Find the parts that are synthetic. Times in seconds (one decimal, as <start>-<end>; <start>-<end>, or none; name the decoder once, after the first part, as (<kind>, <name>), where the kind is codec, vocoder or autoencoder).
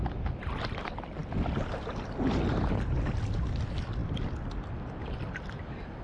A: 4.0-5.0 (vocoder, BigVGAN v2)